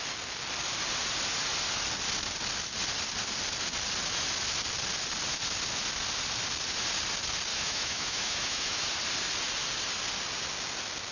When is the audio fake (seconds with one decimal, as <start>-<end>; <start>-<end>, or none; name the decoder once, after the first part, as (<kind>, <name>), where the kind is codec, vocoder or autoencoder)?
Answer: 7.5-8.9 (autoencoder, DAC-VAE)

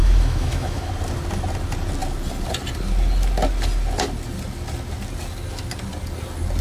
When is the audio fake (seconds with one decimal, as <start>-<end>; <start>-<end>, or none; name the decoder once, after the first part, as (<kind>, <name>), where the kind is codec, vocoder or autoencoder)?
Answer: 0.0-0.9 (autoencoder, DAC-VAE)